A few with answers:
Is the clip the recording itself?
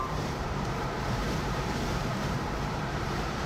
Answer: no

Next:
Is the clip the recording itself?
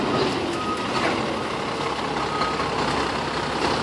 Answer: yes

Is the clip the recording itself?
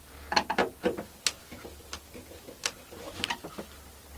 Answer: yes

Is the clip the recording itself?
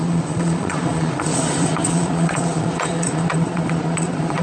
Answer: no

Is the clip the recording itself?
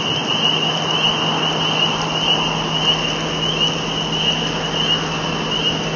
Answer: yes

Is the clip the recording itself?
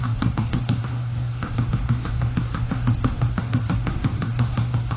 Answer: no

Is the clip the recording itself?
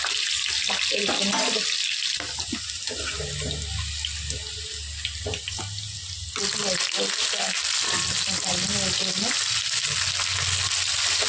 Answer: yes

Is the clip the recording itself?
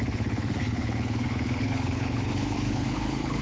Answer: no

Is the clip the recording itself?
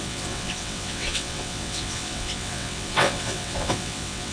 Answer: no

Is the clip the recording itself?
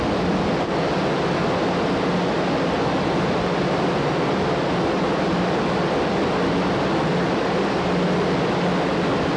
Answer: yes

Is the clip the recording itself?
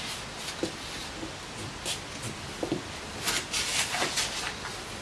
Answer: yes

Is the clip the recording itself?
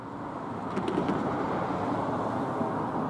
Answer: yes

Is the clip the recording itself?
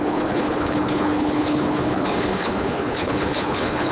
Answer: no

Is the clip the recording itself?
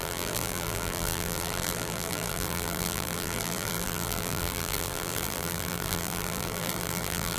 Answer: no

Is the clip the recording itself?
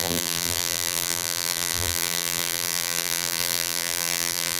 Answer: no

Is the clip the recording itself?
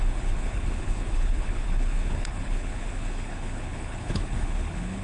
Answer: no